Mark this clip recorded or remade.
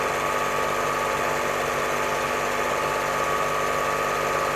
recorded